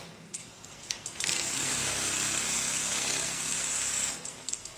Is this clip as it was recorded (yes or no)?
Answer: no